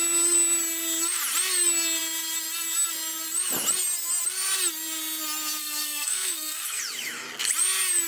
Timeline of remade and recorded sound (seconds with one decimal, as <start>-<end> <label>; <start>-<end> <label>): 0.0-5.6 recorded; 5.6-6.8 remade; 6.8-8.1 recorded